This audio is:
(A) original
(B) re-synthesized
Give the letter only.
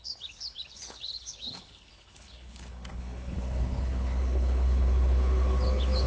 B